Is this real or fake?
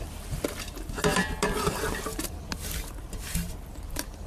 real